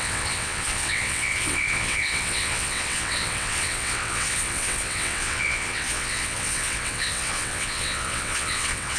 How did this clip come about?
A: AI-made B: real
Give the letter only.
A